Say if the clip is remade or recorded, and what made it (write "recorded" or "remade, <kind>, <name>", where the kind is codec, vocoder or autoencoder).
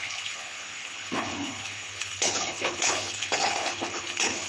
remade, codec, HILCodec